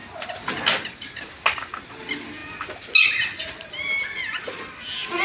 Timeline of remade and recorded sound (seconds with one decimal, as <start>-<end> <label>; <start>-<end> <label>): 0.0-5.2 recorded